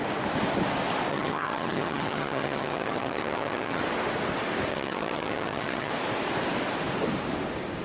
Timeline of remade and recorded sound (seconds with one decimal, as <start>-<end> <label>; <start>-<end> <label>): 0.0-1.1 recorded; 1.1-3.8 remade; 3.8-4.7 recorded; 4.7-5.9 remade; 5.9-7.8 recorded